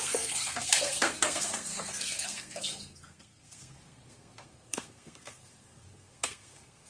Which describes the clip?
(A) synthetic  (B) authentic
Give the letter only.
A